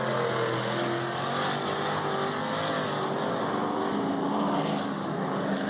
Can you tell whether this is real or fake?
real